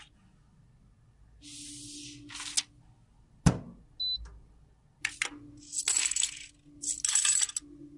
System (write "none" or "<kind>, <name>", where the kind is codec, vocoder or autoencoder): none